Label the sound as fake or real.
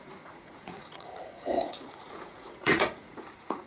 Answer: fake